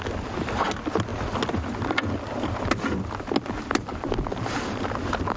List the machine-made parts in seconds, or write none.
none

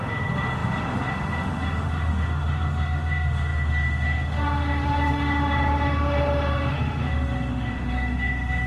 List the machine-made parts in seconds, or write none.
0.0-8.7 (autoencoder, DAC-VAE)

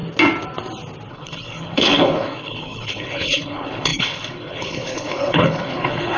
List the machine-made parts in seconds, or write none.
1.1-6.2 (codec, HILCodec)

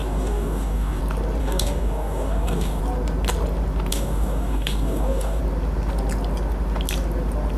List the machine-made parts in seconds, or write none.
0.0-1.0 (codec, DAC); 1.4-2.8; 3.9-5.4

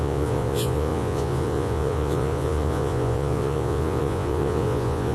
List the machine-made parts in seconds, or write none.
0.0-5.1 (vocoder, Vocos)

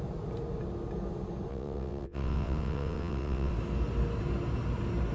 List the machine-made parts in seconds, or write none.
1.5-3.5 (vocoder, WaveNeXt)

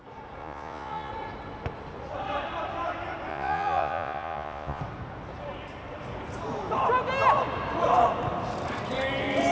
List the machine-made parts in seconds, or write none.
0.4-1.1 (vocoder, Vocos); 3.3-4.8